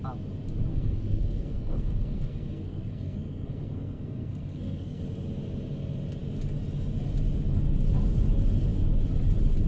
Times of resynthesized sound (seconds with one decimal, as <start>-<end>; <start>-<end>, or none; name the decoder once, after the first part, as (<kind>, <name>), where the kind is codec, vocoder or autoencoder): 0.7-5.0 (codec, SNAC)